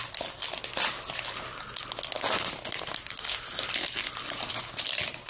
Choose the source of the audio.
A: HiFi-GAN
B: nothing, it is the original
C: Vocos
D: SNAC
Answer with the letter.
B